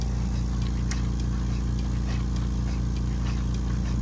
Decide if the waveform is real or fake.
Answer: real